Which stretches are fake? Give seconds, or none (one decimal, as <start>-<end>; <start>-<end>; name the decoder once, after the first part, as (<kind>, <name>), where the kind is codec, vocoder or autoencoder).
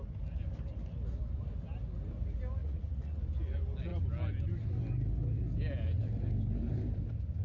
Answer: 2.6-3.2 (vocoder, Vocos)